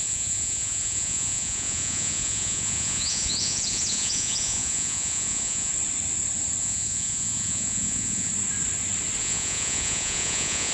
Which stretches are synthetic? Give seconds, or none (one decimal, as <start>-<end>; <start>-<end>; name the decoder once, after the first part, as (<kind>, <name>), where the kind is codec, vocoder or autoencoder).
0.0-5.7 (vocoder, Vocos); 6.6-8.3; 9.2-10.7